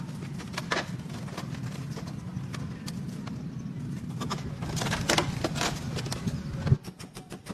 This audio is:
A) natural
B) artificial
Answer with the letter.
A